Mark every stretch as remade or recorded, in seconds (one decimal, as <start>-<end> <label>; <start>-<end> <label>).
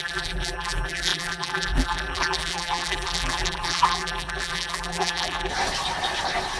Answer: 0.0-5.5 remade; 5.5-6.6 recorded